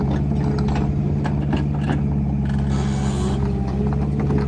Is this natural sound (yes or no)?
yes